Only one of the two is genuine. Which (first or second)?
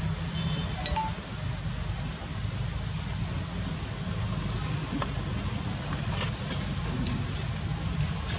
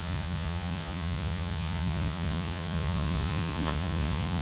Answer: first